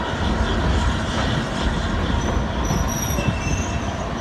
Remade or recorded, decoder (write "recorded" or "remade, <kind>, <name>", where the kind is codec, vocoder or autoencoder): recorded